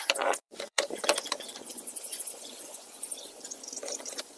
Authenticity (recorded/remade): remade